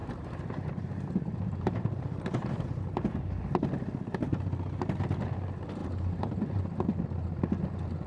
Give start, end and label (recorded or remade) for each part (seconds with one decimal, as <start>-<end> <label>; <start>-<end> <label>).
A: 0.0-2.8 remade; 2.8-5.8 recorded; 5.8-6.6 remade; 6.6-8.1 recorded